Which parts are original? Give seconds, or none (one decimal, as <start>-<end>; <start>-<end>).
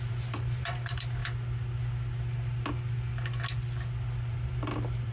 1.2-4.3